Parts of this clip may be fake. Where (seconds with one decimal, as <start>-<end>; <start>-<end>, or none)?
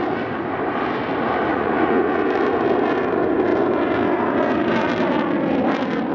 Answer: 1.5-2.2